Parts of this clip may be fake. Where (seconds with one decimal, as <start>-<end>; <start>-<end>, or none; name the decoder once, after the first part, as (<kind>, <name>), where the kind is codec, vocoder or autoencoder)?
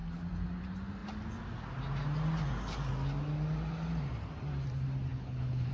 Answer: 5.1-5.7 (codec, HILCodec)